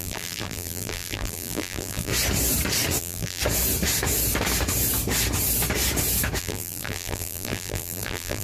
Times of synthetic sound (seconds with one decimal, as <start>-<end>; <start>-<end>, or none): 0.0-2.1; 3.0-3.4; 6.4-8.4